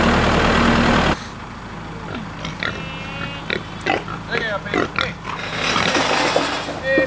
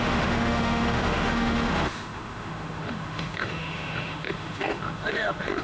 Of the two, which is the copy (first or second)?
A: second